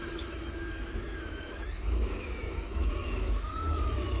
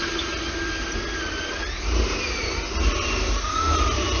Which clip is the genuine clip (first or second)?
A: second